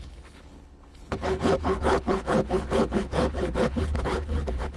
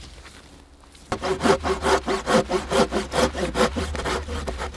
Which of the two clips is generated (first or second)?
first